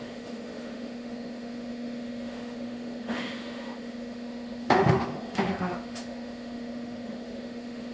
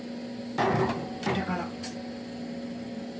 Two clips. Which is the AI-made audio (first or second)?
first